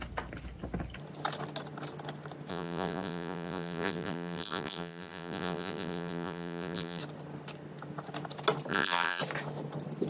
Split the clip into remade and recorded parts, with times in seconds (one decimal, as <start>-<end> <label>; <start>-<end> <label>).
0.0-2.5 recorded; 2.5-7.0 remade; 7.0-8.7 recorded; 8.7-9.2 remade; 9.2-10.1 recorded